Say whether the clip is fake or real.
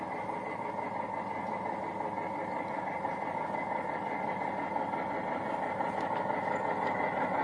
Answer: real